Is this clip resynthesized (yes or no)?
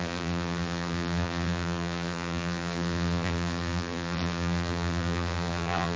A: yes